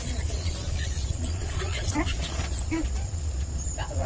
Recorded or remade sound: remade